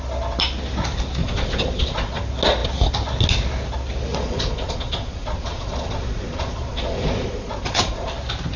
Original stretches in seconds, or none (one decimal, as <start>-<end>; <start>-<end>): 0.0-1.2; 2.2-4.1; 8.1-8.6